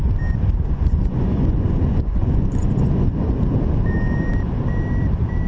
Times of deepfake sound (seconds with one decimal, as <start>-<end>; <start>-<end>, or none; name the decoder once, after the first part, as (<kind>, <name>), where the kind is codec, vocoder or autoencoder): 0.6-3.4 (vocoder, Vocos)